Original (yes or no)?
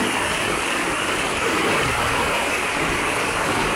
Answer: no